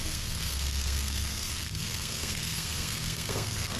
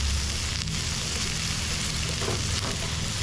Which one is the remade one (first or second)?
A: first